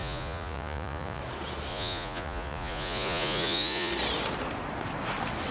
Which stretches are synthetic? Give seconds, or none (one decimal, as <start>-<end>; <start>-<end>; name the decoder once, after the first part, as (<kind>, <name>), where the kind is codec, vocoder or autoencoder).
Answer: 0.0-1.2 (vocoder, Vocos); 1.7-3.9